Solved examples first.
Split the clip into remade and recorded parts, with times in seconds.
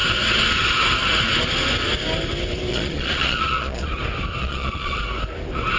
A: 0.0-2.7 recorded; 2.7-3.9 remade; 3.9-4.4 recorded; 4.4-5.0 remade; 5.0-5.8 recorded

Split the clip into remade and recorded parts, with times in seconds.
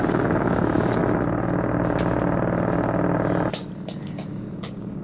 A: 0.0-1.0 remade; 1.0-4.0 recorded; 4.0-5.0 remade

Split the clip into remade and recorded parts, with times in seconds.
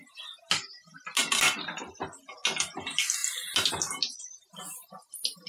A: 0.0-1.2 recorded; 1.2-1.9 remade; 1.9-5.5 recorded